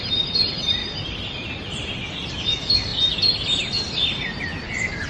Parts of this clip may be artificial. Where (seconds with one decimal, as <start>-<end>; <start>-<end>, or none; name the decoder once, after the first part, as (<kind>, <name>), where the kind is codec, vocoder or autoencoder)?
none